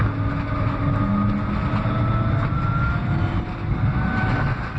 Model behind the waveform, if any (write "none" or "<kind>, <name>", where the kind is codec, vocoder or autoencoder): none